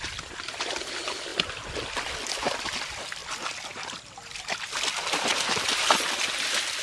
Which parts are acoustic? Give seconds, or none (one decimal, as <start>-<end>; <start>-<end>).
0.0-5.3; 5.8-6.8